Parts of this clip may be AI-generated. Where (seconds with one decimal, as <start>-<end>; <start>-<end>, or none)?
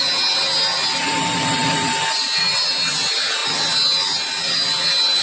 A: none